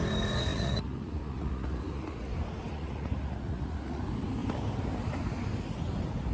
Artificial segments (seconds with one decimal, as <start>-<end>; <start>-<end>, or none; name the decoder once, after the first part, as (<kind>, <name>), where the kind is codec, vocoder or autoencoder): 0.5-2.3 (vocoder, Vocos); 2.7-4.0